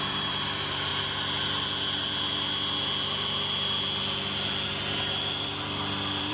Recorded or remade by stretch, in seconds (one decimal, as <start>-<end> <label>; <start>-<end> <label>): 0.0-0.9 remade; 0.9-4.7 recorded; 4.7-6.3 remade